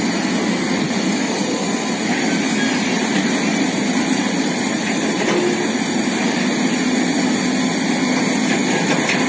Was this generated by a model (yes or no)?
no